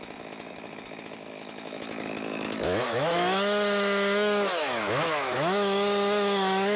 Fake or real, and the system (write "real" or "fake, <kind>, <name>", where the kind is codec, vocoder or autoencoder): fake, autoencoder, DAC-VAE